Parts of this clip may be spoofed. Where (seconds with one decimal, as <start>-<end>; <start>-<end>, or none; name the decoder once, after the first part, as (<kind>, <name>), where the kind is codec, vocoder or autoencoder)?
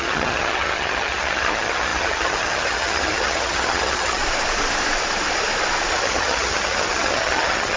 0.0-4.2 (vocoder, HiFi-GAN); 5.9-7.8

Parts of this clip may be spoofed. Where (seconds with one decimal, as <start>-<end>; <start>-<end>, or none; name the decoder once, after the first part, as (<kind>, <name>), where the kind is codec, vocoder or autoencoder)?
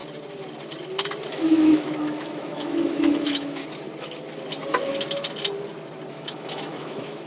1.3-3.6 (autoencoder, DAC-VAE); 6.1-7.3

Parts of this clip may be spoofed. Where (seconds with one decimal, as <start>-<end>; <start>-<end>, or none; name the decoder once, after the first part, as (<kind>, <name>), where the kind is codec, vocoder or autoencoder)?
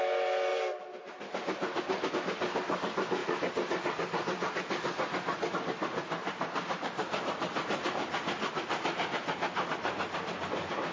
0.5-2.1 (vocoder, BigVGAN v2); 6.2-10.9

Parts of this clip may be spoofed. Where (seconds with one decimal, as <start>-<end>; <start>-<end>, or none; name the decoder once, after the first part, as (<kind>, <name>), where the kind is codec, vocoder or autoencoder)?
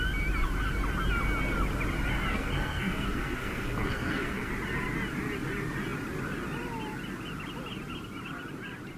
2.3-4.5 (codec, SNAC)